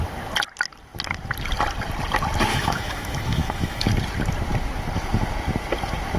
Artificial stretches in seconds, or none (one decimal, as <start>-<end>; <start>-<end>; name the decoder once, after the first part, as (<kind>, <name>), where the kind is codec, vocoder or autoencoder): 2.5-3.9 (autoencoder, DAC-VAE)